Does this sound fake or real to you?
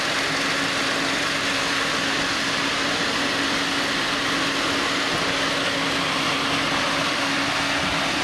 real